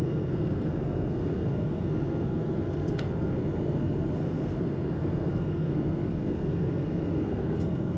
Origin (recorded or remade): remade